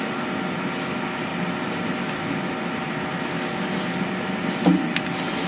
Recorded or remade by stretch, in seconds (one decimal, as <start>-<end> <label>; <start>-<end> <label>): 0.0-5.5 recorded

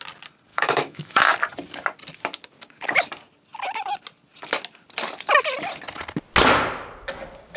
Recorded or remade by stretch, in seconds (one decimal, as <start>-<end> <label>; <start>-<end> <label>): 0.0-0.5 recorded; 0.5-1.2 remade; 1.2-7.6 recorded

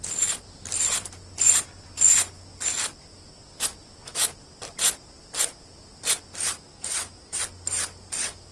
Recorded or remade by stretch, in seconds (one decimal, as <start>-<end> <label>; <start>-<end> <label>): 0.0-6.7 recorded; 6.7-7.4 remade; 7.4-8.5 recorded

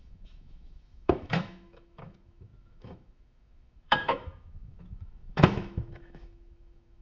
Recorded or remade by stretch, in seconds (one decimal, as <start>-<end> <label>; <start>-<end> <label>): 0.0-7.0 remade

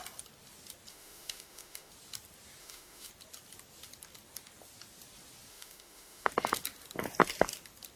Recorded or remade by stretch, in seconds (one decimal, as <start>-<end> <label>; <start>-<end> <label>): 0.0-0.9 recorded; 0.9-1.9 remade; 1.9-2.6 recorded; 2.6-3.1 remade; 3.1-5.5 recorded; 5.5-6.3 remade; 6.3-8.0 recorded

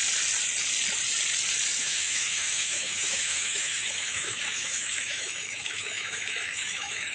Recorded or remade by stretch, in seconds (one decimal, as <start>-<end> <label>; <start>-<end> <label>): 0.0-1.8 recorded; 1.8-7.1 remade